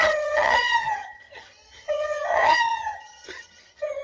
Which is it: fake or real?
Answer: fake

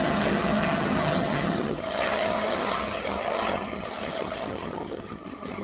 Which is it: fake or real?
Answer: fake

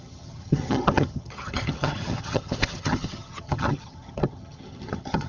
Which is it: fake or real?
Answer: fake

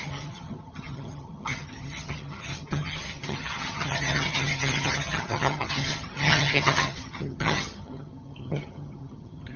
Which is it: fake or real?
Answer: fake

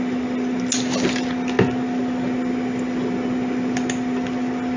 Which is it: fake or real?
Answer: real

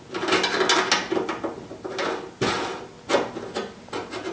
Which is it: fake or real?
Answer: real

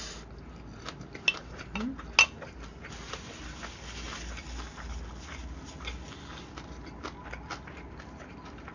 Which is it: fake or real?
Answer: real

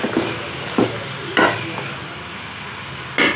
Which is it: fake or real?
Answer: real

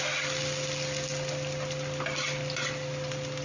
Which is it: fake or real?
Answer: real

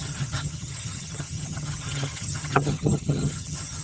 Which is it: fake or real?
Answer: fake